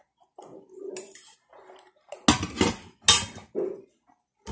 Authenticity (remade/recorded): recorded